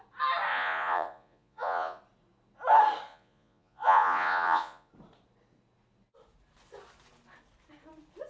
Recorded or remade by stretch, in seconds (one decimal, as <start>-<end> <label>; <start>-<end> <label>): 0.0-0.5 recorded; 0.5-2.0 remade; 2.0-3.1 recorded; 3.1-4.9 remade; 4.9-8.3 recorded